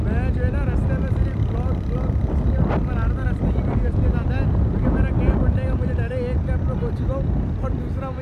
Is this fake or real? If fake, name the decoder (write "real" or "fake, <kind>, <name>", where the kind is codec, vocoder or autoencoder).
real